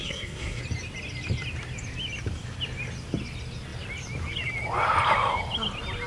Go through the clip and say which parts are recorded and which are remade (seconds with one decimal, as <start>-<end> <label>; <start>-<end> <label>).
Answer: 0.0-0.6 remade; 0.6-6.1 recorded